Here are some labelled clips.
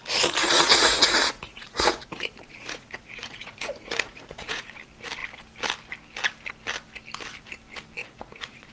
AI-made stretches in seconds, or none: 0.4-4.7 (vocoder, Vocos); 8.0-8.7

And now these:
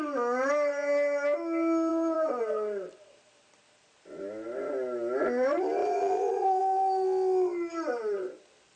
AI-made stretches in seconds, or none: 1.9-2.4 (vocoder, Vocos); 5.8-6.6

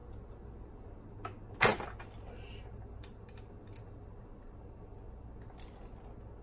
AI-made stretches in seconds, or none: none

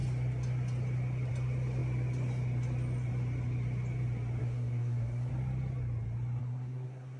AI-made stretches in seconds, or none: 4.4-5.3 (codec, SNAC); 6.4-7.2